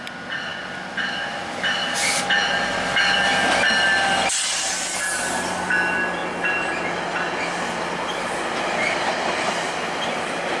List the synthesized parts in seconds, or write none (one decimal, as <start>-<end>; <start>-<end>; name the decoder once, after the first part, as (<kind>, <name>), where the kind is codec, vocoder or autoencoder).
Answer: none